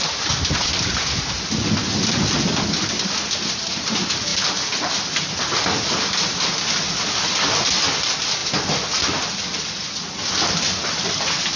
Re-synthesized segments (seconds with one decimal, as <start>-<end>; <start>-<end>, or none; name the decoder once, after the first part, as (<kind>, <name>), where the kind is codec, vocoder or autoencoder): none